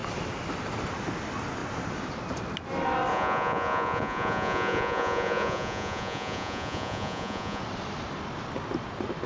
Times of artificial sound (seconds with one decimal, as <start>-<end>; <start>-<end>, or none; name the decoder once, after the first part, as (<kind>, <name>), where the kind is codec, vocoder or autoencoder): 3.1-7.6 (vocoder, Vocos)